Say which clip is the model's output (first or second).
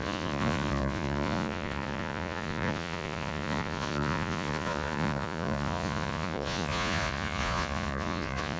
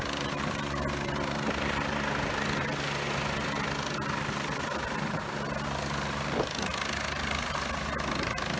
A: first